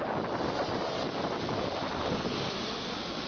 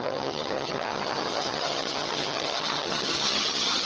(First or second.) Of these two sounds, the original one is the first